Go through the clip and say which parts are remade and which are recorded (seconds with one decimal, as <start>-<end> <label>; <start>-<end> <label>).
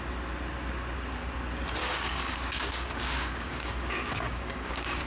0.0-1.8 recorded; 1.8-5.1 remade